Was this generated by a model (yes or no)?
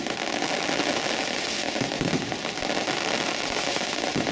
no